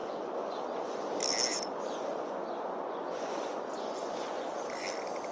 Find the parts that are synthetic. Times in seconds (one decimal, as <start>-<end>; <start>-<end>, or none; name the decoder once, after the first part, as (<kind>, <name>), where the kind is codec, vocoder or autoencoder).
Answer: 0.0-1.1 (vocoder, Vocos); 1.5-4.6